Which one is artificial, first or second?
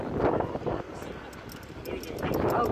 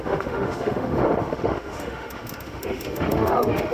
second